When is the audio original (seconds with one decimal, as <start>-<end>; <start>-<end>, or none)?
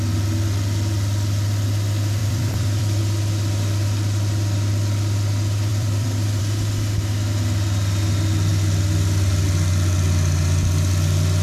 0.0-2.2; 3.0-5.7; 6.4-11.4